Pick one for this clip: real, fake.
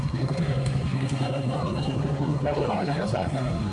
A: fake